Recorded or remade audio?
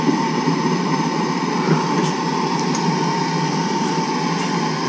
recorded